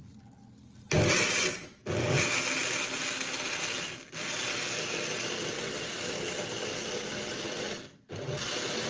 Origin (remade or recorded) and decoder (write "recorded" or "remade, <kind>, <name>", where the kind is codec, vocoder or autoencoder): recorded